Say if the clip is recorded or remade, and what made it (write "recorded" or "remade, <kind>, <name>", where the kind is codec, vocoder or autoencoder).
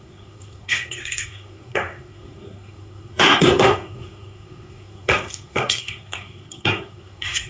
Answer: remade, codec, SNAC